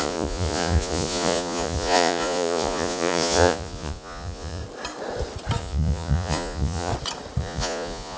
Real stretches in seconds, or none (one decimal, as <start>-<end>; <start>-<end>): 4.6-5.6; 6.9-7.4